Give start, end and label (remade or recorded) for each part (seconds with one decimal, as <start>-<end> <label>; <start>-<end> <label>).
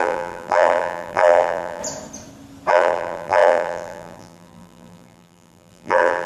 0.0-1.8 remade; 1.8-2.7 recorded; 2.7-6.3 remade